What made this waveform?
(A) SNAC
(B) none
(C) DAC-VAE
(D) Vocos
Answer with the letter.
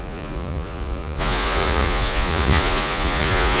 D